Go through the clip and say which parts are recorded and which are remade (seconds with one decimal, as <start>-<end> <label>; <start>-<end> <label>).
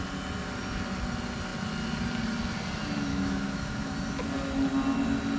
0.0-3.1 recorded; 3.1-3.9 remade; 3.9-5.4 recorded